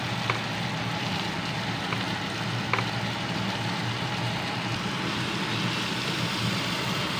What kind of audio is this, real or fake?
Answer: real